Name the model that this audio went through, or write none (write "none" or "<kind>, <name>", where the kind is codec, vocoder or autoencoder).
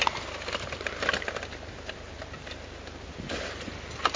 none